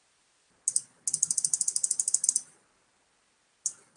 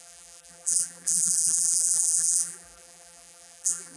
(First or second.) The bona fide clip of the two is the first